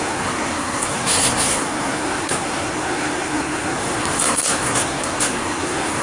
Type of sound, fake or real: fake